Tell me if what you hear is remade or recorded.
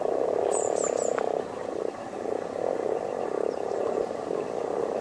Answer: recorded